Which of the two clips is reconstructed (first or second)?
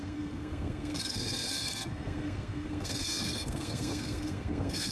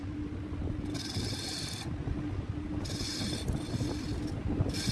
first